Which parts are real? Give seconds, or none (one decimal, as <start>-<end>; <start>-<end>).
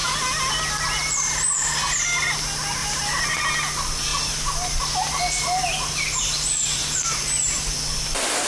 0.5-2.8; 3.4-6.8; 7.6-8.5